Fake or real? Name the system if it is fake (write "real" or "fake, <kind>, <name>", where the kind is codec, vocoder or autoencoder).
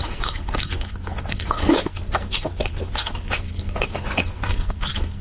fake, codec, SNAC